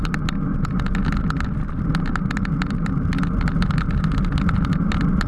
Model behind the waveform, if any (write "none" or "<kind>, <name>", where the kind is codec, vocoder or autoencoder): none